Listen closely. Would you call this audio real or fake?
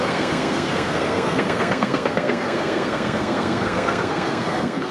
fake